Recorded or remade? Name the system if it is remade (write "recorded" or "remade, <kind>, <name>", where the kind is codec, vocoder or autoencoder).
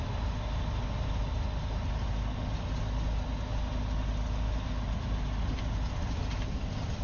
recorded